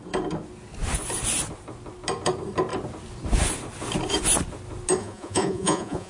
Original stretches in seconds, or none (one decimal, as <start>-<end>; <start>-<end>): 0.0-5.0